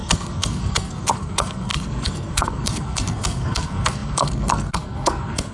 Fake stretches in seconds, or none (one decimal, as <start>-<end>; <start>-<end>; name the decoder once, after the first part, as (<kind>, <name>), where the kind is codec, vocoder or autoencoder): 0.0-5.5 (codec, SNAC)